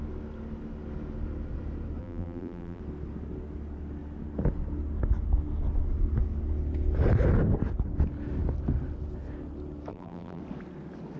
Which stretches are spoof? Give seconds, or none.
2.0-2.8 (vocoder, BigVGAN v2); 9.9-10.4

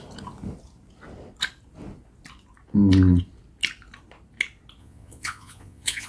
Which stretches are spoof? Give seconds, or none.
4.8-6.1 (vocoder, Vocos)

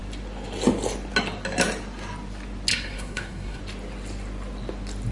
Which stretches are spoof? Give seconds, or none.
2.7-3.6 (codec, SNAC)